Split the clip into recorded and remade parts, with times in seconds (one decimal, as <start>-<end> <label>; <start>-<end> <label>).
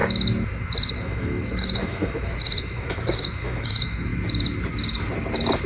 0.0-0.9 recorded; 0.9-4.1 remade; 4.1-5.7 recorded